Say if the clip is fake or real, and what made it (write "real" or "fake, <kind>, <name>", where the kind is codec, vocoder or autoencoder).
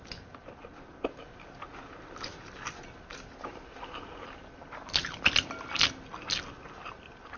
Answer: real